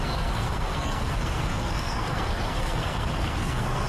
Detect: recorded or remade remade